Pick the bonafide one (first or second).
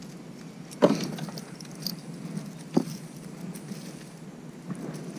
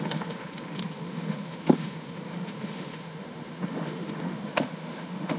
first